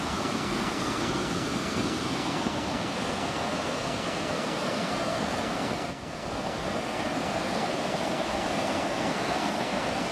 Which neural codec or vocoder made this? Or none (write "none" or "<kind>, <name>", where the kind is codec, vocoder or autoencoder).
codec, SNAC